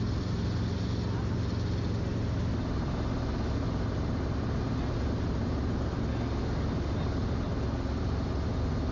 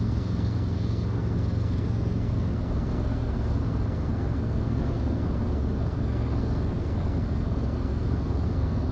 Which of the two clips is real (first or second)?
first